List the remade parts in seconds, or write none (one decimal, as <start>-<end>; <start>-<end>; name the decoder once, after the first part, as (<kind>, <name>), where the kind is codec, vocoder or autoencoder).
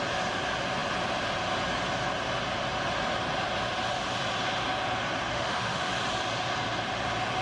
5.3-5.9 (autoencoder, DAC-VAE)